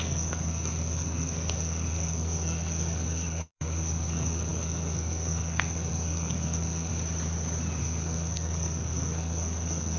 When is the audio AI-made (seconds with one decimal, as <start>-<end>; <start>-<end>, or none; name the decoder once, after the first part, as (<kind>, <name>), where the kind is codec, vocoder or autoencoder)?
0.0-6.9 (codec, SNAC); 7.8-10.0